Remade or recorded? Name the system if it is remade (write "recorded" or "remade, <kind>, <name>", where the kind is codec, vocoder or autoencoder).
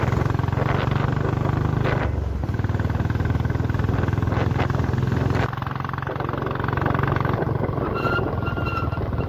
recorded